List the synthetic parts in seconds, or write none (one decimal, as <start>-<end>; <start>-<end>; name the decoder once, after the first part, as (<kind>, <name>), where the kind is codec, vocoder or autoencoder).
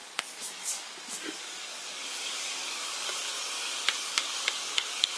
0.0-5.2 (codec, DAC)